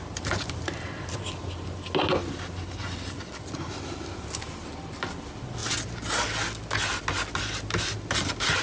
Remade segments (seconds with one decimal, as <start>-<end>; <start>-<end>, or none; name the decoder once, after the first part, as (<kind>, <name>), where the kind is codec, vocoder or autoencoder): none